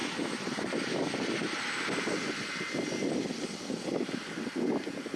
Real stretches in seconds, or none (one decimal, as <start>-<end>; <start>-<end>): 0.0-2.7